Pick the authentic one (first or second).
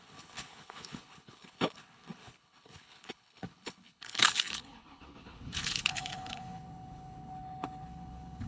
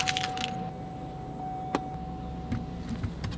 second